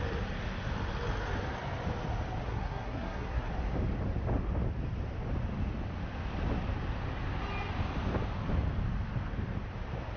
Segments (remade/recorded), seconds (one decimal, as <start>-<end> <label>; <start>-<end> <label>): 0.0-2.4 recorded; 2.4-3.5 remade; 3.5-10.2 recorded